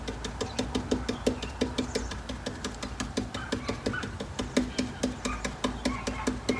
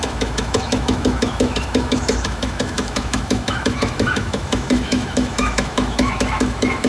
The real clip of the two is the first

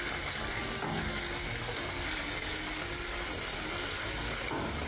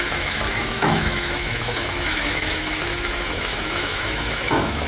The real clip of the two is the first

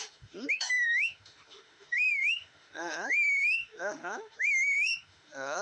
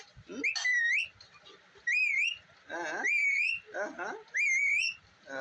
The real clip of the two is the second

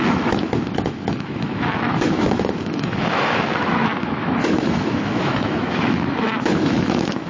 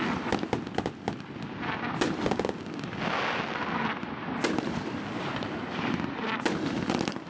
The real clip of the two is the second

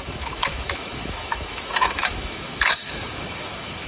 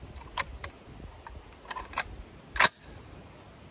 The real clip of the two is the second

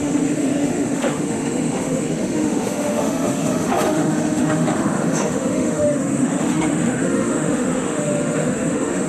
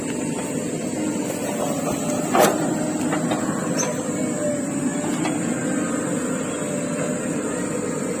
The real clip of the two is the second